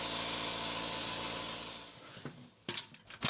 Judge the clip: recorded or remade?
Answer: recorded